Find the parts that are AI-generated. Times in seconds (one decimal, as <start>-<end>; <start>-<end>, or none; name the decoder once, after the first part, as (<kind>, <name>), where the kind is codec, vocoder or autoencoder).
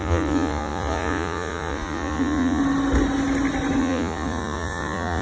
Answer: 0.0-2.6 (vocoder, Vocos); 3.8-5.2